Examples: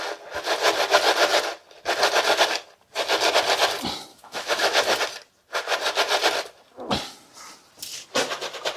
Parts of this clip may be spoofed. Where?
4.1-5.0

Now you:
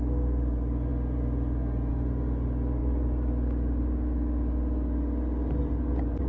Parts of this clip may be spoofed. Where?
none

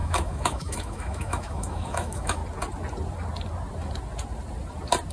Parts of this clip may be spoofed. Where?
0.0-2.4

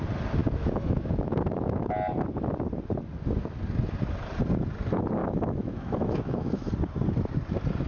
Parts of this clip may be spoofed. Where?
0.4-1.9; 5.2-6.7

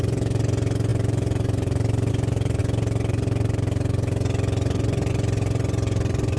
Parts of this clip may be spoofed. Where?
none